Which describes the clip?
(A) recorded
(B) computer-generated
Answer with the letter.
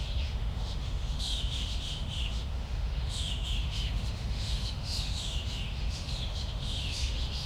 B